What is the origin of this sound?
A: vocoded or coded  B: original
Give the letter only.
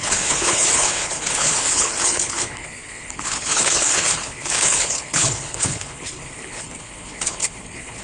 A